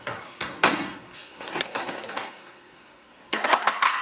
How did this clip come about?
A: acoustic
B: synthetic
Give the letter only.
B